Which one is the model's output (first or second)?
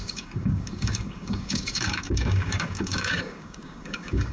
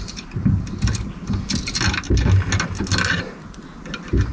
first